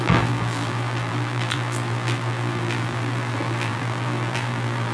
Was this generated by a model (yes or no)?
yes